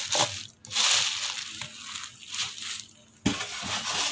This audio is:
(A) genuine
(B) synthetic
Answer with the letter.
A